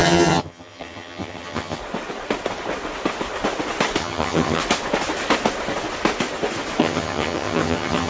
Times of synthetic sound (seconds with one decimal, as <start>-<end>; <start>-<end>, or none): 0.0-1.8; 4.0-4.6; 6.8-8.1